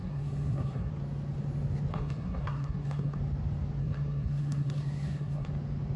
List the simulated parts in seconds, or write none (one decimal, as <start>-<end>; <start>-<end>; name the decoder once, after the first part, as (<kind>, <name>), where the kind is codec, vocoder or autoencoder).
0.0-0.9 (codec, SNAC); 1.9-3.2; 3.8-5.5